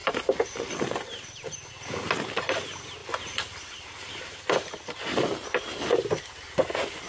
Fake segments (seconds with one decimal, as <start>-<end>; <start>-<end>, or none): 0.0-1.7; 3.0-5.0